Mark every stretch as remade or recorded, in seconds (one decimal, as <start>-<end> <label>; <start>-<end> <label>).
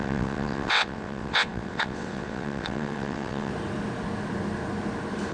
0.0-3.5 remade; 3.5-5.3 recorded